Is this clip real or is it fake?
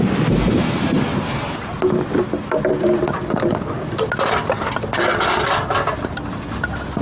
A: fake